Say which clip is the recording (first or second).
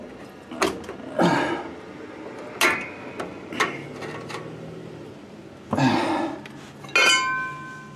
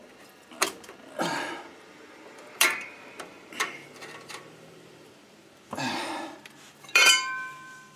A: first